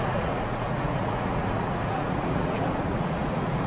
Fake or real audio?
fake